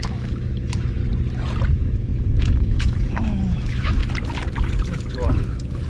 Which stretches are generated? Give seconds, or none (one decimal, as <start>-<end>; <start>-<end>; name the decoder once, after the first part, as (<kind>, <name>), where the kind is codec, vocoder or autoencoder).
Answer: 0.0-1.0 (autoencoder, DAC-VAE); 1.7-4.0; 5.3-5.9